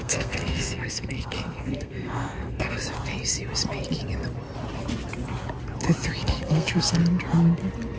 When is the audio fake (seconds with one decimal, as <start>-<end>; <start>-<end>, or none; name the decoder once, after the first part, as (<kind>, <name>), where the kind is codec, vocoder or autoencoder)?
0.0-2.8 (codec, SNAC); 6.2-7.0